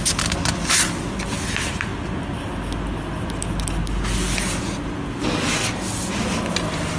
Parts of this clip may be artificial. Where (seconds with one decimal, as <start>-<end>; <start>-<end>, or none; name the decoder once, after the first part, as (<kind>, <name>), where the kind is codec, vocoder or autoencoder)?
none